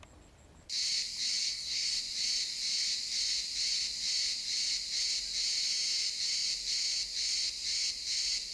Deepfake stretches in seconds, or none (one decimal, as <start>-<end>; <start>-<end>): 1.4-2.0